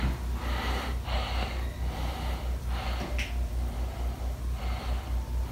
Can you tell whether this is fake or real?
real